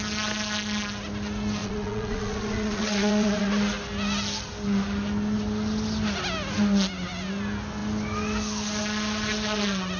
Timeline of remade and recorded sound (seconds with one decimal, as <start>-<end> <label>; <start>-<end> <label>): 0.0-1.6 recorded; 1.6-3.5 remade; 3.5-10.0 recorded